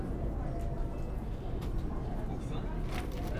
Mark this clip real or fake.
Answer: real